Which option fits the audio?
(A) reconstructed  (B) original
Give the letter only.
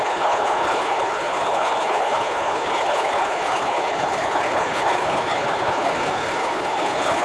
A